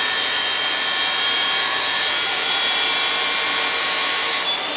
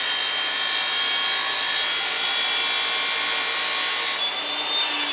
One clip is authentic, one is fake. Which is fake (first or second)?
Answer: first